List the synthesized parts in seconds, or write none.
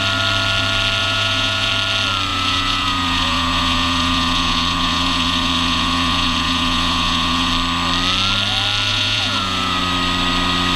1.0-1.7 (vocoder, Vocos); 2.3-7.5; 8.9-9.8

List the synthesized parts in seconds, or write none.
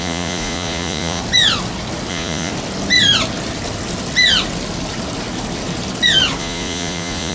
0.0-1.2 (vocoder, Vocos); 2.1-2.5; 6.4-7.3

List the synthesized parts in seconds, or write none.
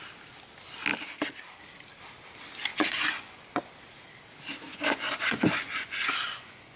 2.7-3.6 (vocoder, Vocos); 4.7-6.8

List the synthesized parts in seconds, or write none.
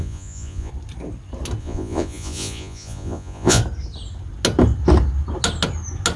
0.0-0.7 (vocoder, Vocos); 1.6-3.6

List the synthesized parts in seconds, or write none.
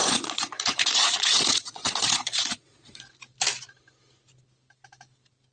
0.0-3.0 (vocoder, Vocos)